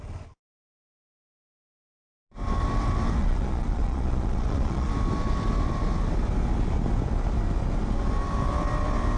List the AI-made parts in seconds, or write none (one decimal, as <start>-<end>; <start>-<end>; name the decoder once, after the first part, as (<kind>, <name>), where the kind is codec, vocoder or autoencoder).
3.2-4.9 (vocoder, Vocos)

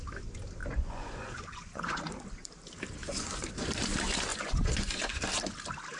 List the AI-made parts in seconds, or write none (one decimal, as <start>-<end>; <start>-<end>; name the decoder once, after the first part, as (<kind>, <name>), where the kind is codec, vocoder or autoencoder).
0.6-2.1 (vocoder, Vocos); 3.0-3.5; 4.3-5.2

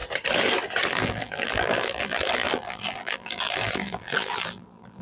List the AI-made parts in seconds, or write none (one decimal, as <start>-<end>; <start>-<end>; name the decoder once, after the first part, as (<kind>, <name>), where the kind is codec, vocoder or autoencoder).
0.9-5.0 (vocoder, BigVGAN v2)

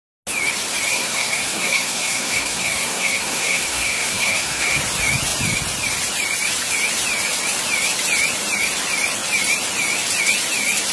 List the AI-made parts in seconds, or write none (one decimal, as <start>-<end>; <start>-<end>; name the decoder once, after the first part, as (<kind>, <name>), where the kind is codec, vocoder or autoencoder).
0.9-4.8 (codec, SNAC)